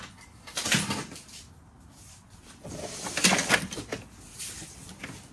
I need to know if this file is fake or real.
real